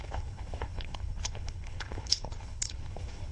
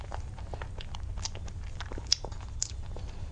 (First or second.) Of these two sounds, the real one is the second